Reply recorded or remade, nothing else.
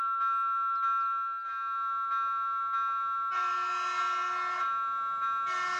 recorded